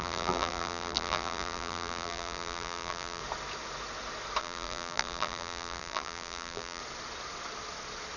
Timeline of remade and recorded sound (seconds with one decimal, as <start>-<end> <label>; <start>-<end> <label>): 0.0-3.2 remade; 3.2-4.4 recorded; 4.4-6.8 remade; 6.8-8.2 recorded